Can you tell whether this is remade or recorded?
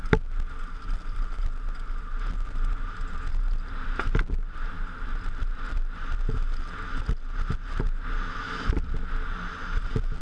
recorded